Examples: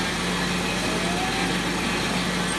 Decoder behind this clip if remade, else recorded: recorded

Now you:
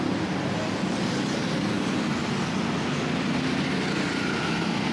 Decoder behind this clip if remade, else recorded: recorded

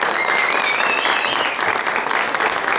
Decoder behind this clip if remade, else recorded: recorded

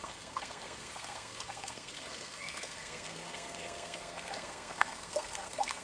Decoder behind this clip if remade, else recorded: remade, codec, SNAC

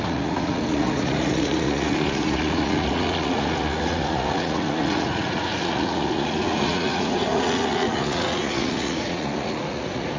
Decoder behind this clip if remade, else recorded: remade, vocoder, Vocos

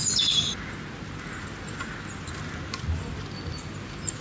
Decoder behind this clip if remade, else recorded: recorded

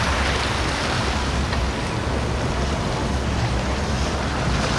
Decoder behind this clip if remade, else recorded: recorded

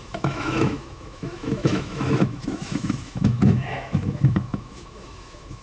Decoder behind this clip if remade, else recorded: remade, autoencoder, DAC-VAE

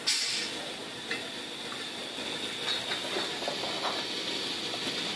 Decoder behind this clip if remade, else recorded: recorded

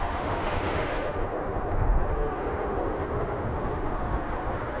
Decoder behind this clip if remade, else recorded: remade, autoencoder, DAC-VAE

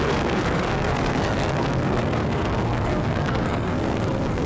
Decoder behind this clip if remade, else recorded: remade, codec, SNAC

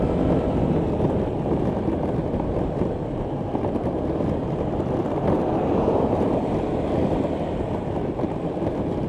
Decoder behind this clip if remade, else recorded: remade, vocoder, BigVGAN v2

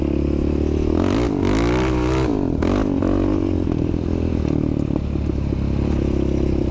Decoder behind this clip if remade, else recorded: recorded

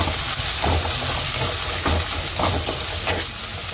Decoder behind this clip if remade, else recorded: recorded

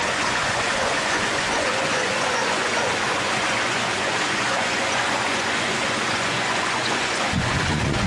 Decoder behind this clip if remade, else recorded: remade, vocoder, Vocos